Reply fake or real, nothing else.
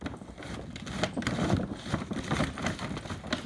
real